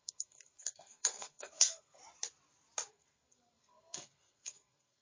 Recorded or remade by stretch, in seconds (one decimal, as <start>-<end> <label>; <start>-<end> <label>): 0.0-2.0 remade; 2.0-2.9 recorded; 2.9-5.0 remade